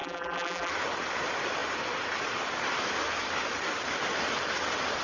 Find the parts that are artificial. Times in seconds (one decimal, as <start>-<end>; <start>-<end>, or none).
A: 0.0-0.7